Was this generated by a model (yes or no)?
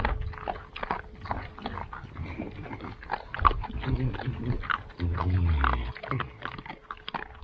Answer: no